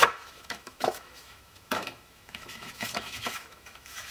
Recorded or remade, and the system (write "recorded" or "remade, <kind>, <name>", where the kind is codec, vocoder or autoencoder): remade, autoencoder, DAC-VAE